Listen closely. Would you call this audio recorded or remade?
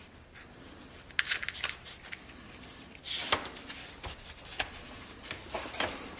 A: recorded